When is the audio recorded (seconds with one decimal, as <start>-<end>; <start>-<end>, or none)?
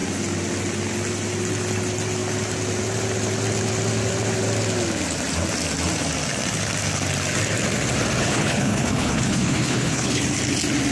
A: 0.0-8.2; 10.2-10.9